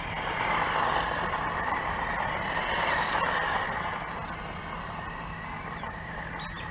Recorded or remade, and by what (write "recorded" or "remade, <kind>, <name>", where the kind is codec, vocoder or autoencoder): recorded